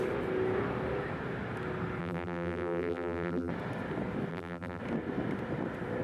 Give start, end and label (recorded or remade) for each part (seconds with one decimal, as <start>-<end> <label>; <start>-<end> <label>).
0.0-2.0 recorded; 2.0-3.5 remade; 3.5-4.3 recorded; 4.3-4.8 remade; 4.8-6.0 recorded

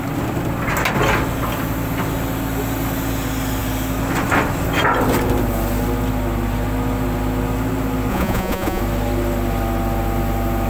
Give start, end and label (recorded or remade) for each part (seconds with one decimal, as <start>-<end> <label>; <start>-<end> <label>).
0.0-8.1 recorded; 8.1-8.8 remade; 8.8-10.7 recorded